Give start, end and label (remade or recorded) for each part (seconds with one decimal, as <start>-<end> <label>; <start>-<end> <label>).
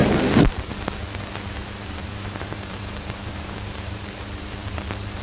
0.0-2.0 recorded; 2.0-5.2 remade